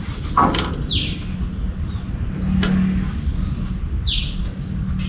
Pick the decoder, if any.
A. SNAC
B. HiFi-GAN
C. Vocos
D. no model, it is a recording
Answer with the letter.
D